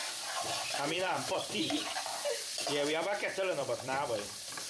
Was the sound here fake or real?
fake